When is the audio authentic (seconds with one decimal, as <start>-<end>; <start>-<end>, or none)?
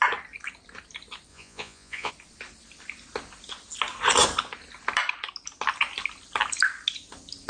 0.0-1.3; 2.1-7.5